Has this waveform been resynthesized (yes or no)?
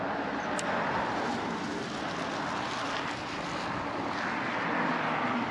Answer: no